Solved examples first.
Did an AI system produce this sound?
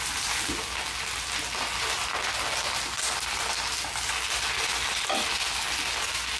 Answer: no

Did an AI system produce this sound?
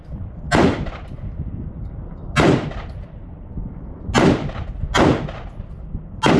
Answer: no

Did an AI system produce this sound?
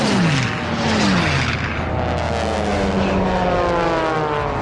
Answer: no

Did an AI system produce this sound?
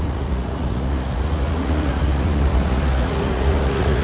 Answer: yes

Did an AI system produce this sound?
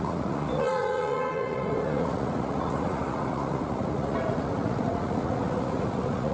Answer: yes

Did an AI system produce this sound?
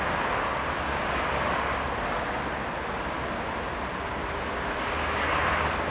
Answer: no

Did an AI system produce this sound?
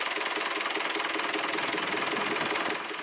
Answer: no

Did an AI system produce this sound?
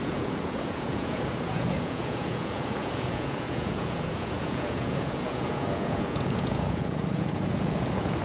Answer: yes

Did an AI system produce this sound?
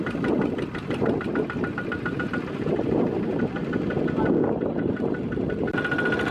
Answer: no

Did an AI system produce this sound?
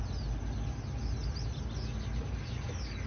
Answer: no